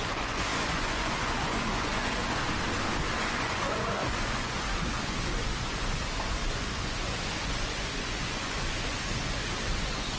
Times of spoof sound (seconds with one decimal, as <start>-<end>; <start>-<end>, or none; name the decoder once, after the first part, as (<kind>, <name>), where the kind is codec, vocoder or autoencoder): 0.0-2.4 (vocoder, Vocos); 3.2-10.2